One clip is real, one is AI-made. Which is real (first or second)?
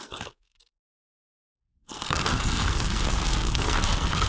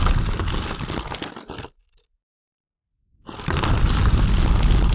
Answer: second